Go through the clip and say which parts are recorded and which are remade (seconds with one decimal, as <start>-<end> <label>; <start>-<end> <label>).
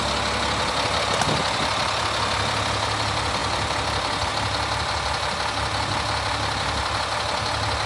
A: 0.0-7.9 recorded